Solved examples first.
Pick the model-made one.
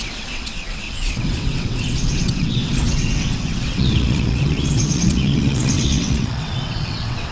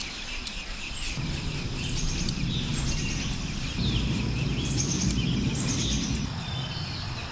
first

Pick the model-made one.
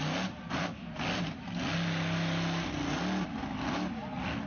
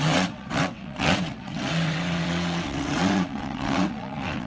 second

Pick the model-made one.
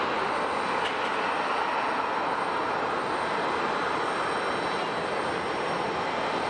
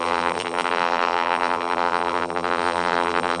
second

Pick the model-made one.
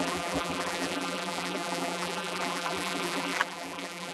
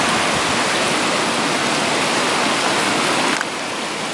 first